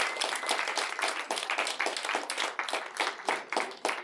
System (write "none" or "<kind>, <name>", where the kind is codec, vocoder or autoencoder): none